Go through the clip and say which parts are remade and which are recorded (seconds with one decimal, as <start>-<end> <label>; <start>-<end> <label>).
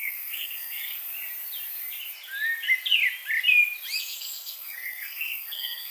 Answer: 0.0-1.1 remade; 1.1-4.0 recorded; 4.0-5.9 remade